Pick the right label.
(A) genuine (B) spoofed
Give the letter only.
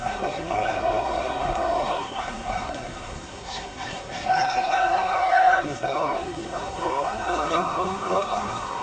B